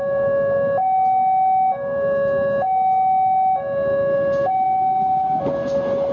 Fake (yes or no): no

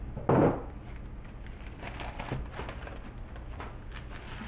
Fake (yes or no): no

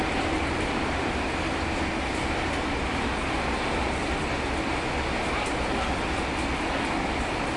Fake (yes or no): no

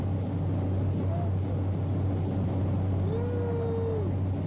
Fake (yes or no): no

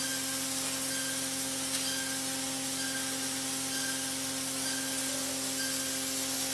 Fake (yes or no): no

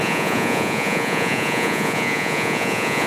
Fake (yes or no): yes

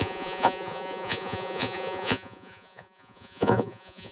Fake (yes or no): yes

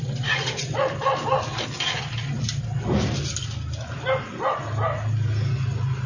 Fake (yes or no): no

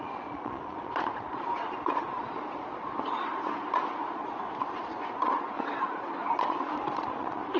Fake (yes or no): yes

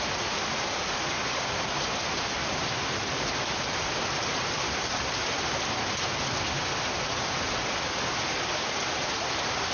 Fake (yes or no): no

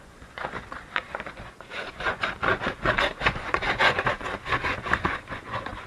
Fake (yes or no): yes